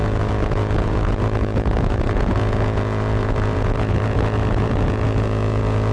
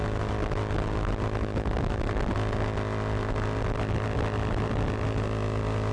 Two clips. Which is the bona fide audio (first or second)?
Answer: second